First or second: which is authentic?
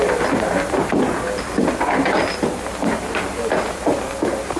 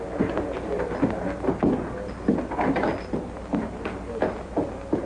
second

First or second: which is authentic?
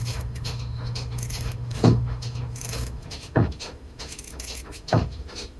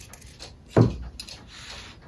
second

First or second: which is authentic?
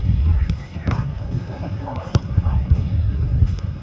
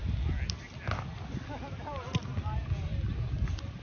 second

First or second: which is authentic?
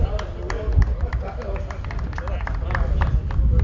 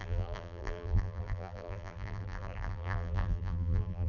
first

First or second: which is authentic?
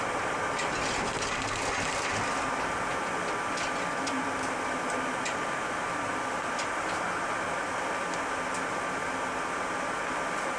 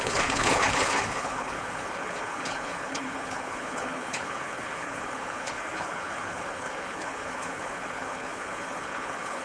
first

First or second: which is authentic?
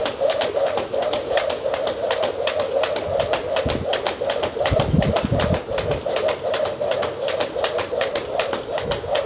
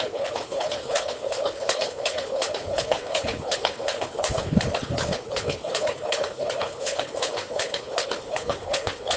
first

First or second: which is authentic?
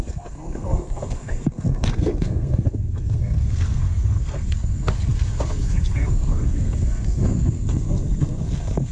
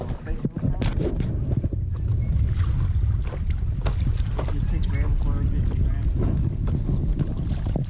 second